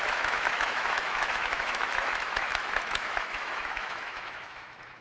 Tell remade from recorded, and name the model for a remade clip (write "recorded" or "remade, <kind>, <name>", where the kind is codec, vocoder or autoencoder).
remade, autoencoder, DAC-VAE